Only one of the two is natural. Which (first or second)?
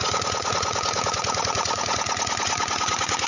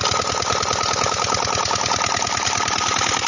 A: second